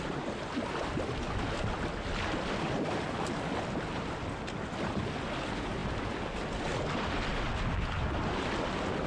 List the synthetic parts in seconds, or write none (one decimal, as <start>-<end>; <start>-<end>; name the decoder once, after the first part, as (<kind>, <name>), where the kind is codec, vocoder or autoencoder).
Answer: none